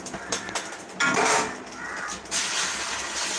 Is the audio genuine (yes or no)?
yes